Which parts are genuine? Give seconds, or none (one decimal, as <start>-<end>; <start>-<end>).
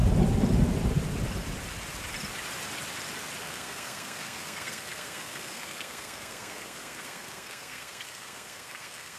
0.0-3.4